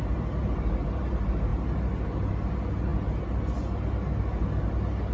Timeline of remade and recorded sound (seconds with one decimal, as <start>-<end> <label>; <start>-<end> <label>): 0.0-5.1 recorded